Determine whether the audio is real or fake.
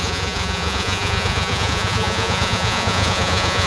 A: fake